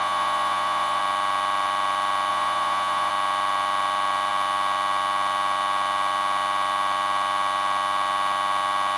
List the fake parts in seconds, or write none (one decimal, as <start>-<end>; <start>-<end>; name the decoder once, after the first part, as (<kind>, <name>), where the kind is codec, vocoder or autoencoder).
0.0-1.0 (vocoder, Vocos); 2.3-3.1